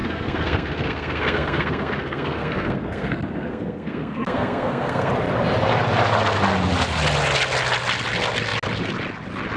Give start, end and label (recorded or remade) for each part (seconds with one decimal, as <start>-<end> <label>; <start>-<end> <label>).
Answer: 0.0-5.1 remade; 5.1-9.6 recorded